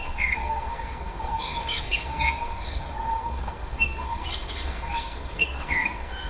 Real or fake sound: fake